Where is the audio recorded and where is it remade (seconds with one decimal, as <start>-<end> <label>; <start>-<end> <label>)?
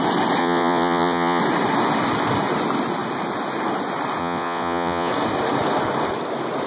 0.0-0.4 recorded; 0.4-1.4 remade; 1.4-4.2 recorded; 4.2-5.1 remade; 5.1-6.7 recorded